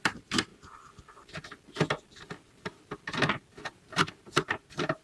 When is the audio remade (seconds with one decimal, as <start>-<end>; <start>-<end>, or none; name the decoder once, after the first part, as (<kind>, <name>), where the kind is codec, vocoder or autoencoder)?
0.0-0.5 (vocoder, BigVGAN v2); 3.5-5.0